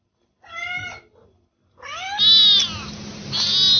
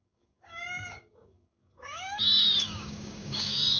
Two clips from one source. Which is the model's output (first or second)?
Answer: second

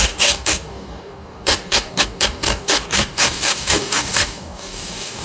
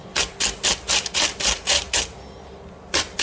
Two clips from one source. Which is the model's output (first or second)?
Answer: first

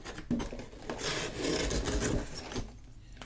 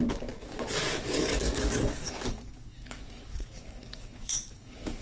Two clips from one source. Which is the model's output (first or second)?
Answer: second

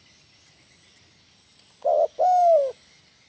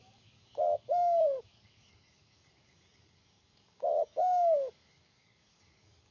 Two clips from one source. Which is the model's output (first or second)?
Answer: second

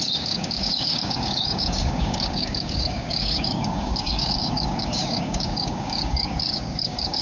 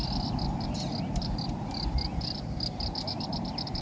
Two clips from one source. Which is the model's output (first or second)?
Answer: first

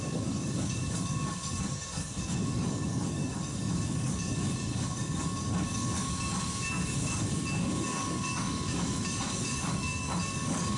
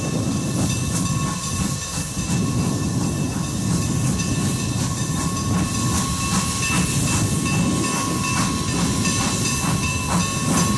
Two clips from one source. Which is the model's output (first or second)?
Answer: first